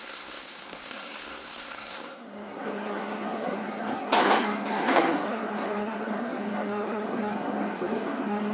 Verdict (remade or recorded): remade